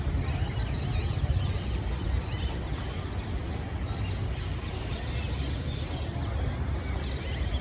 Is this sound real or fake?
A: real